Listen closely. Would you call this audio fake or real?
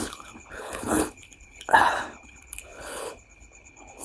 fake